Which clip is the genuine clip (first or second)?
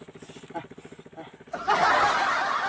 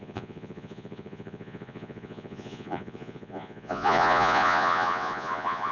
first